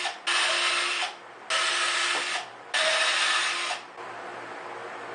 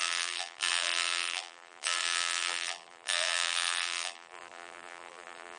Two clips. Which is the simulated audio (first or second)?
second